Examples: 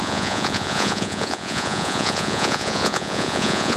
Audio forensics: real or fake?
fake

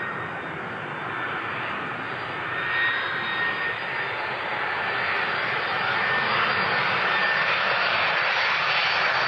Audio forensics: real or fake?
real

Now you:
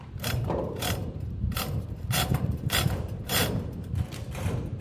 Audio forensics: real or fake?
fake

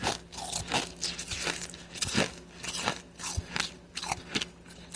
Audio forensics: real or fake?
real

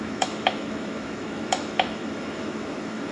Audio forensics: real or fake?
fake